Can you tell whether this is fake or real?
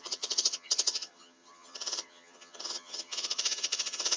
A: fake